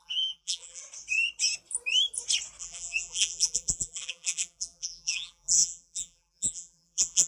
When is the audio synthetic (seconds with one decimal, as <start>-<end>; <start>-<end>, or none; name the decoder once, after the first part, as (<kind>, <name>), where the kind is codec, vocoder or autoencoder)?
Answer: 0.0-0.8 (vocoder, BigVGAN v2); 2.6-7.3